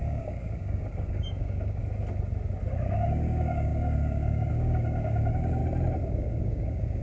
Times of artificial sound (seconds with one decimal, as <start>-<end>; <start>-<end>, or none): 0.0-1.8; 2.7-5.6; 6.1-7.0